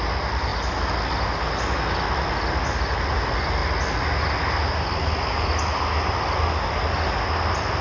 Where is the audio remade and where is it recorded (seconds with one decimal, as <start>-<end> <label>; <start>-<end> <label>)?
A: 0.0-7.8 recorded